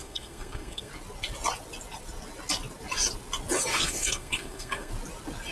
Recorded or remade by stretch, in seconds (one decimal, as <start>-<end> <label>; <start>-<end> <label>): 0.0-0.9 remade; 0.9-3.7 recorded; 3.7-4.9 remade; 4.9-5.5 recorded